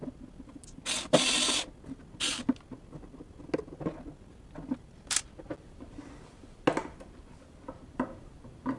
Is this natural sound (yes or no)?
yes